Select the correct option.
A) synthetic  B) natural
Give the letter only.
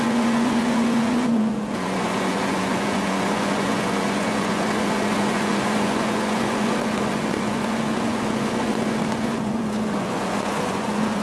A